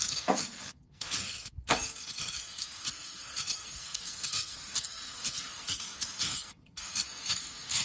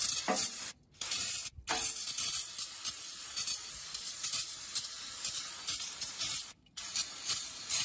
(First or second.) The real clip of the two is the second